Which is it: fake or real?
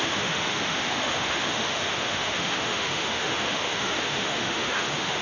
fake